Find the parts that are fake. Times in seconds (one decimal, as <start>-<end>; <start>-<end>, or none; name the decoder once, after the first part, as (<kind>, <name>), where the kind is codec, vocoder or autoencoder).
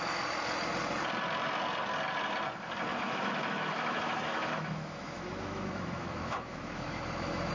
2.9-7.5 (autoencoder, DAC-VAE)